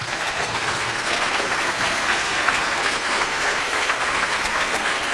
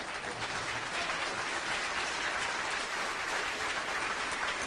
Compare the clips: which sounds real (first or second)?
second